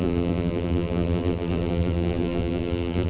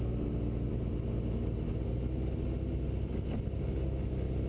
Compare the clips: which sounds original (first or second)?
second